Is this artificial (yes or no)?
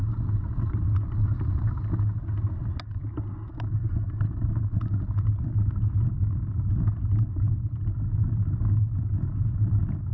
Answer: no